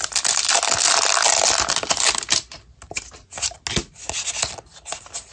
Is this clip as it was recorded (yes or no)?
yes